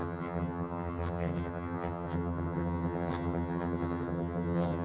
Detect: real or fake fake